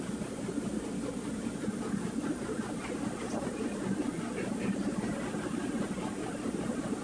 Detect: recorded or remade recorded